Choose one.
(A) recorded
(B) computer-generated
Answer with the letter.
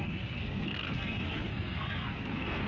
B